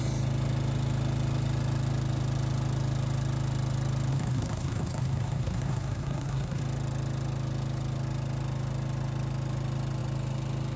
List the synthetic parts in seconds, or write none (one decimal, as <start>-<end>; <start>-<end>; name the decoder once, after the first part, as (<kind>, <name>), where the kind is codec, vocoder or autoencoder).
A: 4.1-6.6 (codec, SNAC)